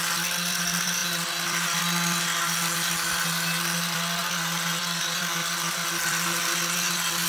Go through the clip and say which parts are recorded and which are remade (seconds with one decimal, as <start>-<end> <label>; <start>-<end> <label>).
0.0-7.3 recorded